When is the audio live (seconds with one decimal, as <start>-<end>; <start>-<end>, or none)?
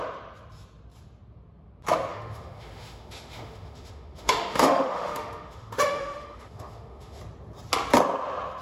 0.0-2.1; 7.2-8.6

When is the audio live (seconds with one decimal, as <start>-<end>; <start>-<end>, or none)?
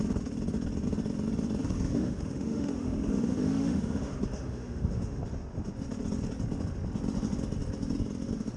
0.0-1.6; 5.2-8.6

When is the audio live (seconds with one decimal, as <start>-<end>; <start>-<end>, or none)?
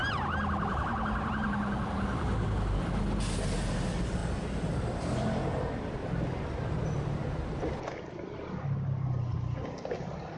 0.0-10.4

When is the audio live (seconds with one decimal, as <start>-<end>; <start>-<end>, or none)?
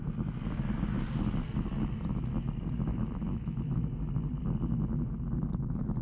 0.0-2.9; 3.8-6.0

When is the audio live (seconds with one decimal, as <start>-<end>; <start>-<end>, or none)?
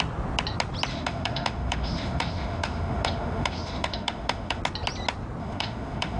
0.0-0.9; 4.6-5.4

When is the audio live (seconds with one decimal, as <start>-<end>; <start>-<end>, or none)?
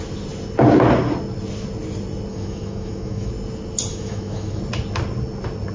0.0-2.3; 3.3-3.9; 4.6-5.7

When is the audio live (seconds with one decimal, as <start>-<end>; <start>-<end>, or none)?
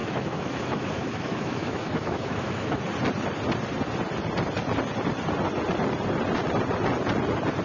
2.8-7.6